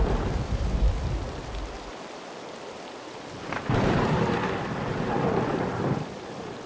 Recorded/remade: remade